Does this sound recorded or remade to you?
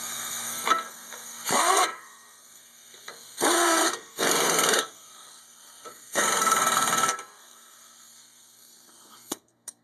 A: remade